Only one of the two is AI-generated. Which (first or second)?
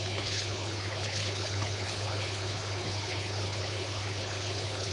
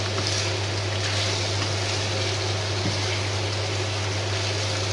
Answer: first